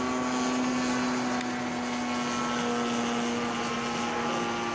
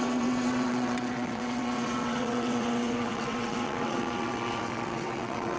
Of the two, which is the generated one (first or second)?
second